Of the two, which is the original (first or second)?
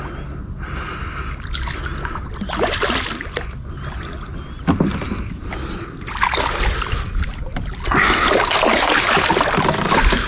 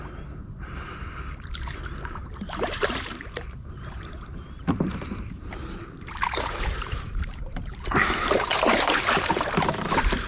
first